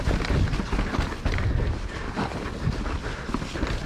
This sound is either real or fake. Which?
real